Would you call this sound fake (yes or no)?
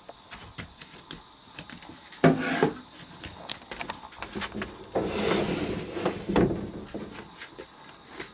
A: no